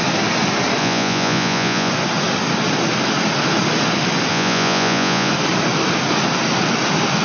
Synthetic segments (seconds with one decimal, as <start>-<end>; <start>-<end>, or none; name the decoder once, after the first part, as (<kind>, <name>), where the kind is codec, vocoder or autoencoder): 0.8-1.9 (vocoder, Vocos); 4.3-5.3